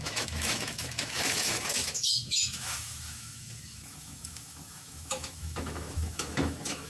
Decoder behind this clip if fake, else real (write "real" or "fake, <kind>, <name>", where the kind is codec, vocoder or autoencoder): fake, autoencoder, DAC-VAE